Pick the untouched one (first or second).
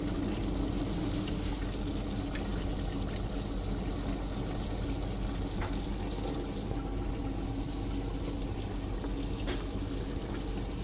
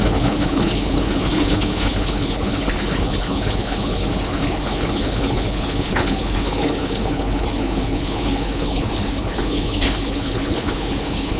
first